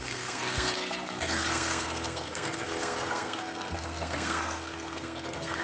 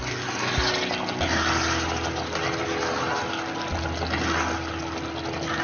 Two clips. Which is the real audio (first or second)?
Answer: second